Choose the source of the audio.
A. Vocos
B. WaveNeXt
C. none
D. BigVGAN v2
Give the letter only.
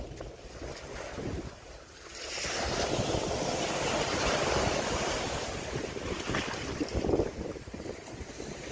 C